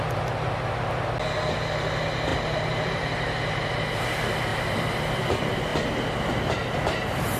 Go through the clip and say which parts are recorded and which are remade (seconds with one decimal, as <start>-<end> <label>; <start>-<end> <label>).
0.0-2.3 recorded; 2.3-3.7 remade; 3.7-4.5 recorded; 4.5-5.2 remade; 5.2-7.4 recorded